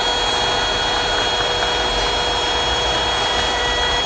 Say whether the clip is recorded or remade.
recorded